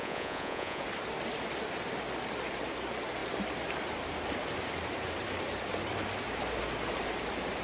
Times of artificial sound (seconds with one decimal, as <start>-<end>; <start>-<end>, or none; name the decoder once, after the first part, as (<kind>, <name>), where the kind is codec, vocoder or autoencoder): 0.0-0.8 (vocoder, Vocos)